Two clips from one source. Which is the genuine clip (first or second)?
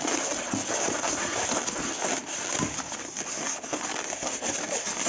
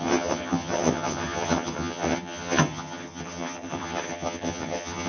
first